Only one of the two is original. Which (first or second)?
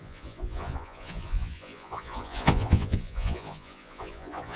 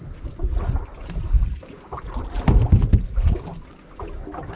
second